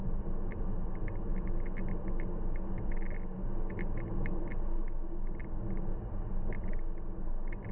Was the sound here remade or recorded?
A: recorded